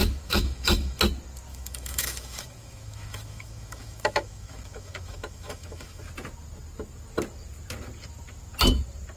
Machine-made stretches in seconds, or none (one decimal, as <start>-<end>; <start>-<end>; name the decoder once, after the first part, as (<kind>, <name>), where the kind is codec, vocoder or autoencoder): 0.0-1.0 (autoencoder, DAC-VAE); 1.5-6.0